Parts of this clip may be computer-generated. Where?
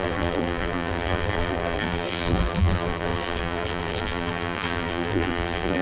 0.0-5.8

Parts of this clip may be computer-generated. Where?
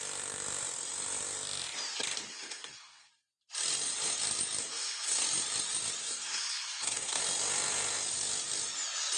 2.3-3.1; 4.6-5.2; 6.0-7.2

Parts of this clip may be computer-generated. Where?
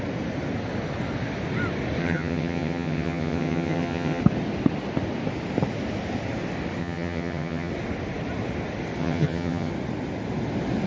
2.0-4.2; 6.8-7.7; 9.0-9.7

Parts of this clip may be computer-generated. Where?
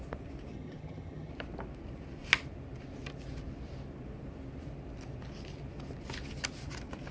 0.5-1.3